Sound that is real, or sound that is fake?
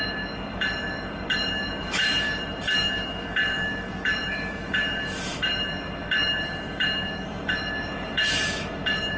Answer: fake